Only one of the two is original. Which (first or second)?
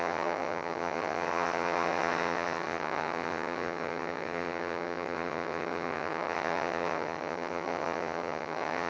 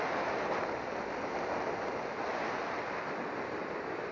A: second